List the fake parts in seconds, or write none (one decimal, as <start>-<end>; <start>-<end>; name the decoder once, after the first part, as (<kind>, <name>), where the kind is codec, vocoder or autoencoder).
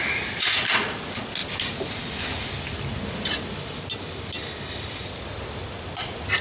none